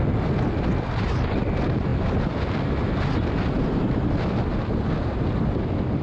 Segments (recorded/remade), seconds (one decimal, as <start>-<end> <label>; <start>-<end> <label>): 0.0-6.0 recorded